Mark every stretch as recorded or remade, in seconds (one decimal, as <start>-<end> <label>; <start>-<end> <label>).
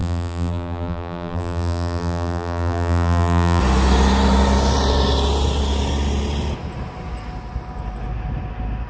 0.0-3.6 remade; 3.6-8.9 recorded